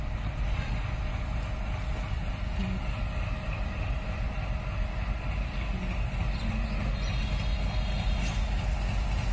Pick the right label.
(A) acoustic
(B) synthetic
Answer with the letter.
A